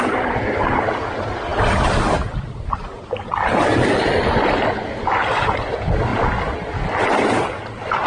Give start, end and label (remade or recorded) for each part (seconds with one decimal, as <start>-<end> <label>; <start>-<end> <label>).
0.0-8.1 recorded